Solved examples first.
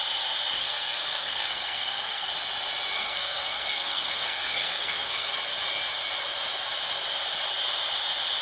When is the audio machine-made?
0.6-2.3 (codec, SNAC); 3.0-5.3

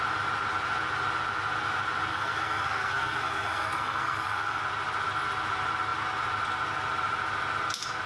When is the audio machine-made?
2.1-4.6 (codec, SNAC)

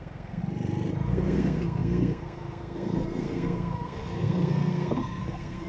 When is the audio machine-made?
0.0-0.4 (codec, SNAC); 1.1-5.7

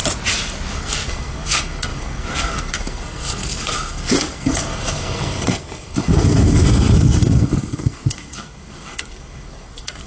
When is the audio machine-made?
0.7-10.1 (codec, SNAC)

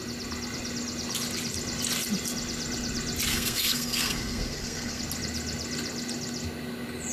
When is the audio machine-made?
3.3-5.0 (codec, SNAC)